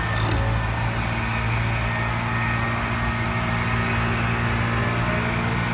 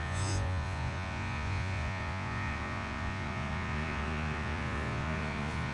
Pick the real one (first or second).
first